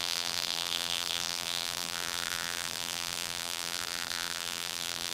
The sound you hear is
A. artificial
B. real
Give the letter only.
A